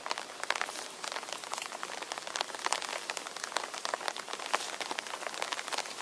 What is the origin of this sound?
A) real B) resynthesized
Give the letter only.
A